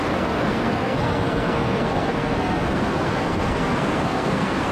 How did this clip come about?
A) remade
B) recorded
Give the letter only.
A